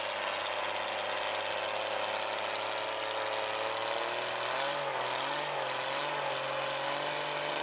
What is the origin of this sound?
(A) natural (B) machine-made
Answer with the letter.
A